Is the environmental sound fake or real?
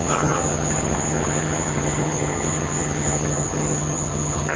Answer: fake